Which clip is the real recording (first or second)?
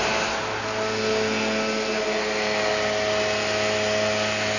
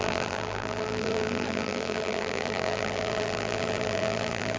first